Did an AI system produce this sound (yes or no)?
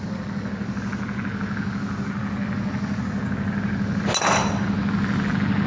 no